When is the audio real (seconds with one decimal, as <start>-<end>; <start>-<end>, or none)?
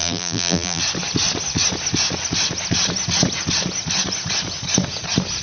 0.8-5.4